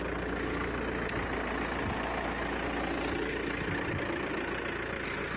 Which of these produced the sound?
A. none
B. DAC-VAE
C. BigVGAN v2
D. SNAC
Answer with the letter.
A